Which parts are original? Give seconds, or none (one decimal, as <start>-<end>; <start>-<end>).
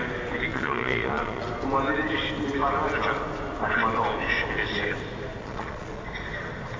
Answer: 0.0-0.5; 1.4-5.4; 6.0-6.8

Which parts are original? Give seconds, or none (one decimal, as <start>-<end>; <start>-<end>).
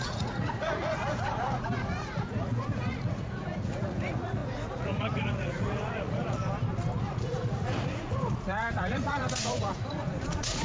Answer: 6.4-7.0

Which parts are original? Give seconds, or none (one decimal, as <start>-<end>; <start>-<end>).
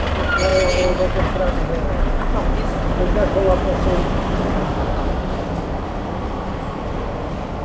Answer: 0.0-0.5; 1.2-7.6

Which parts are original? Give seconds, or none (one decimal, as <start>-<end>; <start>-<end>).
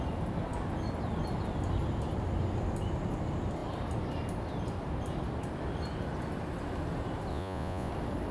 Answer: 0.0-7.3; 7.9-8.3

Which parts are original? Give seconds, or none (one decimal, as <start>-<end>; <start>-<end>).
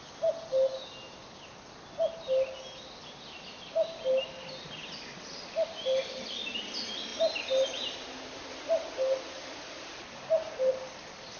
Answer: 0.0-11.4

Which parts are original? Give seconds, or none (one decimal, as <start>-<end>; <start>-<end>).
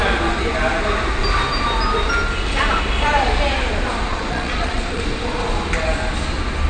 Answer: 0.0-4.1; 5.0-6.7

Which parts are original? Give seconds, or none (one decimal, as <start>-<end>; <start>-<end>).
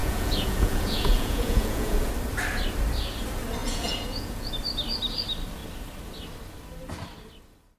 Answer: 2.1-3.6; 4.5-7.8